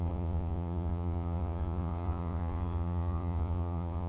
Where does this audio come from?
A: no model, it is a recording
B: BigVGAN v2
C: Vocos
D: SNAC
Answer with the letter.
C